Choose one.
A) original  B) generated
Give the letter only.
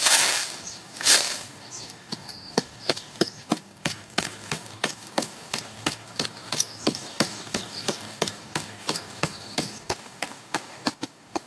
B